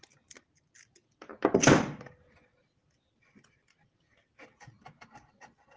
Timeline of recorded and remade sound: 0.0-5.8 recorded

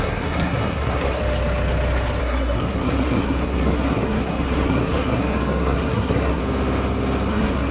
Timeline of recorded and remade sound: 0.0-1.2 remade; 1.2-2.2 recorded; 2.2-6.4 remade; 6.4-7.3 recorded; 7.3-7.7 remade